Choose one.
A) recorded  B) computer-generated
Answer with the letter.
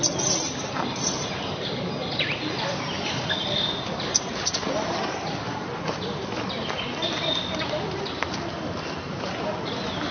A